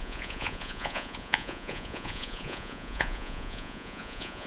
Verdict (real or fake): fake